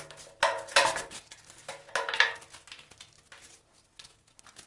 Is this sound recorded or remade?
recorded